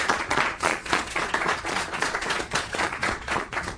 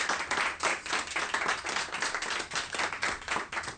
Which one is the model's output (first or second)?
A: first